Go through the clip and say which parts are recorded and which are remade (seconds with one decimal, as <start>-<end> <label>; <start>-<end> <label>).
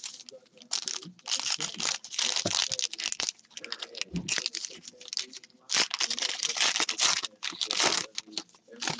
0.0-9.0 recorded